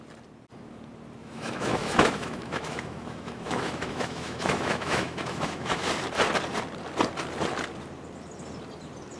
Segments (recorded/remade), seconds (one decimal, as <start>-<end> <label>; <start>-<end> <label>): 0.0-1.2 recorded; 1.2-5.9 remade; 5.9-9.2 recorded